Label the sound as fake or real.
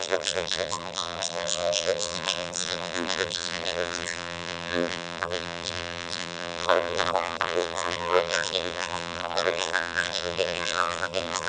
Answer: fake